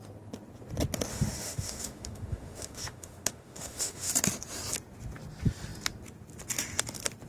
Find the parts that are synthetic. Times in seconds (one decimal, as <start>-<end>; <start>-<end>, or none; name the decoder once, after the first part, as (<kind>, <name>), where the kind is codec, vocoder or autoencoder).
1.1-4.1 (autoencoder, DAC-VAE)